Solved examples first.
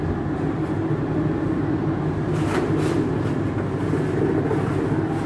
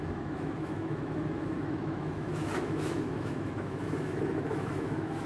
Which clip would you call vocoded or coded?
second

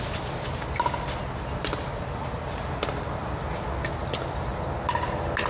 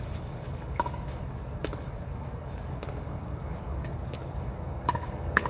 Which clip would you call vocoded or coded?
second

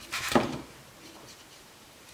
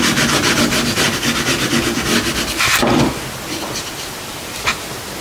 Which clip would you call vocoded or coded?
first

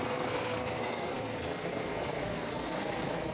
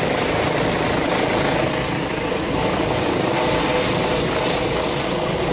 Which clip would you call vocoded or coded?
first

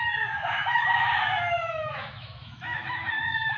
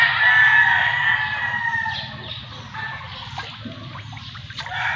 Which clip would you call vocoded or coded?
first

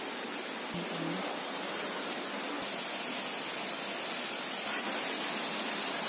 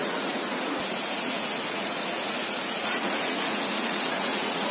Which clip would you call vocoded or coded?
second